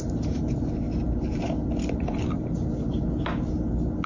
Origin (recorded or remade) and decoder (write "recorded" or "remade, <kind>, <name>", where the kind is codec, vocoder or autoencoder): recorded